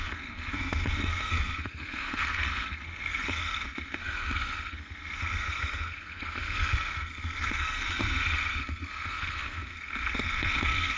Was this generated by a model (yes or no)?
yes